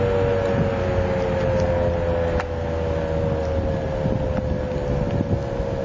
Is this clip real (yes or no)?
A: yes